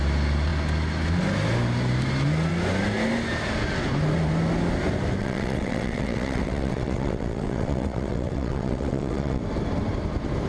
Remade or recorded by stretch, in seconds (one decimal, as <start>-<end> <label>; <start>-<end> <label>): 0.0-5.2 recorded; 5.2-9.4 remade; 9.4-10.5 recorded